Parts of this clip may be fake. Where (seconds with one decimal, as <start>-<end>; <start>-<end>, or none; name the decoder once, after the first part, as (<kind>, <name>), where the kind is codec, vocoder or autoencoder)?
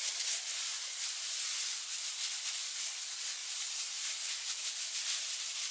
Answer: 3.4-4.5 (vocoder, BigVGAN v2)